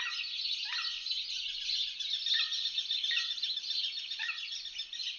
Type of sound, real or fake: real